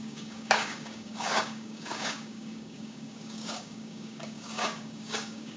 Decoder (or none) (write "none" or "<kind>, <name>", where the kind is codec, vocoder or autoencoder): codec, DAC